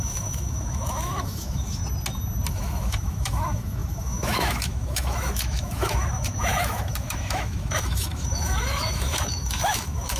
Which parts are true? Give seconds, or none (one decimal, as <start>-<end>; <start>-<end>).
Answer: 1.8-2.5